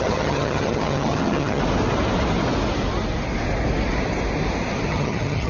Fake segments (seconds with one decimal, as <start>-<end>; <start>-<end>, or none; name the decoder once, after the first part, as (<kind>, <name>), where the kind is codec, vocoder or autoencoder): 0.0-1.6 (vocoder, HiFi-GAN); 4.9-5.5